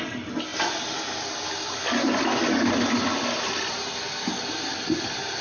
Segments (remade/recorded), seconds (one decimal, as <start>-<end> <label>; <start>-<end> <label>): 0.0-5.4 recorded